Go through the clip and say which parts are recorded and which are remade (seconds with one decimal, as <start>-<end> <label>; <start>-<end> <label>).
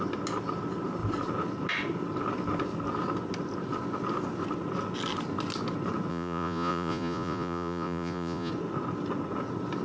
0.0-6.1 recorded; 6.1-8.5 remade; 8.5-9.8 recorded